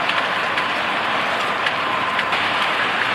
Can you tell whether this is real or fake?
real